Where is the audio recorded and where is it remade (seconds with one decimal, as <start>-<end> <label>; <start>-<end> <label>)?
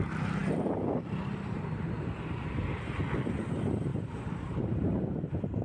0.0-3.9 recorded; 3.9-5.6 remade